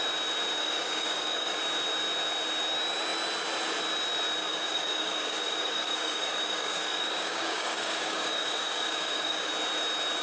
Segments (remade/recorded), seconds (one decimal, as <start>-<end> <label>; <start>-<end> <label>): 0.0-0.6 recorded; 0.6-1.6 remade; 1.6-4.4 recorded; 4.4-9.5 remade; 9.5-10.2 recorded